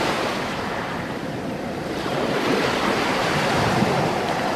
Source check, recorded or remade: remade